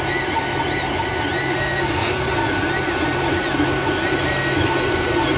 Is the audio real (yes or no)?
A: yes